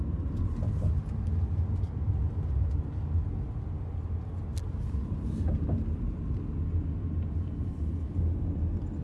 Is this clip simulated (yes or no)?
no